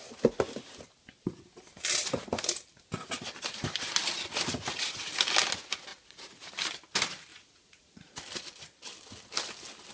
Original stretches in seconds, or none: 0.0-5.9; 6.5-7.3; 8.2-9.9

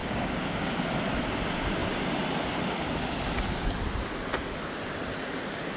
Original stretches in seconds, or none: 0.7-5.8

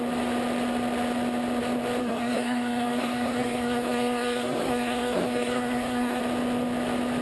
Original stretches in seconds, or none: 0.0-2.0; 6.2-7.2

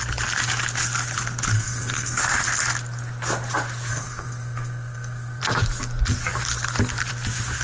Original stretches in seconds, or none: 0.0-1.5; 2.2-3.9; 5.4-7.6

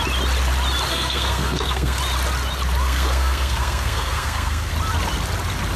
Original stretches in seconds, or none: 0.0-0.9; 2.0-2.8; 4.7-5.8

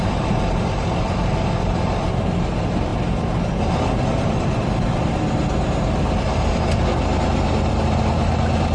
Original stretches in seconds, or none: 0.0-8.7